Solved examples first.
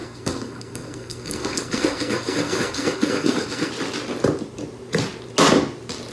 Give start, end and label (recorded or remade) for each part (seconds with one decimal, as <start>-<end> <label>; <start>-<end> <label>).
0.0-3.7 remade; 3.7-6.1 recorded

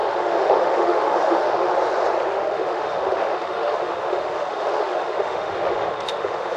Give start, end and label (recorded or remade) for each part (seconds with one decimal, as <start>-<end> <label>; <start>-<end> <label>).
0.0-1.7 remade; 1.7-2.3 recorded; 2.3-6.6 remade

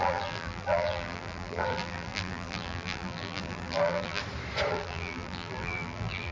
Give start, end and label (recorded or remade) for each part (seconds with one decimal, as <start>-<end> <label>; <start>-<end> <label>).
0.0-4.2 remade; 4.2-4.7 recorded; 4.7-6.3 remade

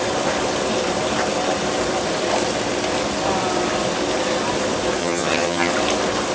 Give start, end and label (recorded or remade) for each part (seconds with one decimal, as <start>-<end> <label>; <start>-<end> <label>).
0.0-5.0 recorded; 5.0-5.7 remade; 5.7-6.3 recorded

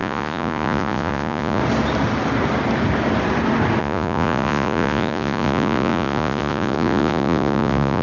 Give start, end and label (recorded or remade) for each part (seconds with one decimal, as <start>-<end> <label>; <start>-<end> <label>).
0.0-1.6 remade; 1.6-3.8 recorded; 3.8-8.0 remade

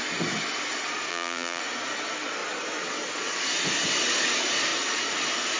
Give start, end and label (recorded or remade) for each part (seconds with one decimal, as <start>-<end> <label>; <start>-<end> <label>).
0.0-1.1 recorded; 1.1-1.6 remade; 1.6-5.6 recorded